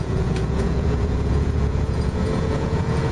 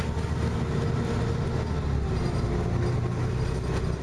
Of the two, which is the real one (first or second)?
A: second